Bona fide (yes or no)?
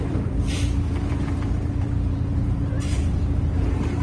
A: no